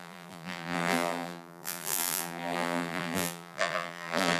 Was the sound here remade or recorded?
remade